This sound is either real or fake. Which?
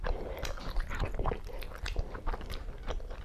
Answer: fake